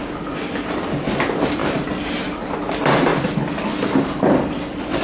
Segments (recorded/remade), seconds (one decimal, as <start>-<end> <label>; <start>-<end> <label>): 0.0-5.0 recorded